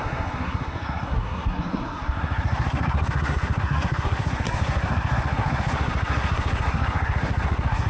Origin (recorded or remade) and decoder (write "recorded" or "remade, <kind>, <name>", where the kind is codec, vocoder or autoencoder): remade, codec, SNAC